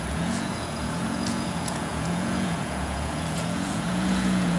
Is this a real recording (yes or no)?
no